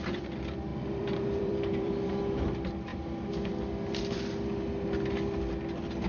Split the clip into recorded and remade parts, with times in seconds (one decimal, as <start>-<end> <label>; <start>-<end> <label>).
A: 0.0-0.7 recorded; 0.7-2.1 remade; 2.1-6.1 recorded